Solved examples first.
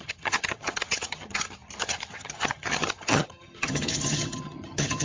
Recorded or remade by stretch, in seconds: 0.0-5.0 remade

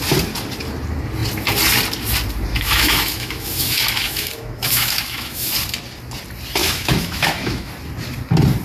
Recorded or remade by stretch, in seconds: 0.0-2.5 recorded; 2.5-5.5 remade; 5.5-6.6 recorded; 6.6-7.7 remade; 7.7-8.6 recorded